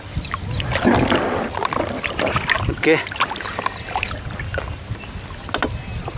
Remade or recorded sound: recorded